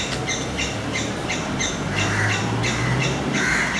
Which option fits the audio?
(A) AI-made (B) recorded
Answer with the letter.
B